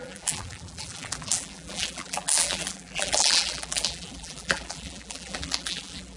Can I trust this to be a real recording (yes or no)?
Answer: no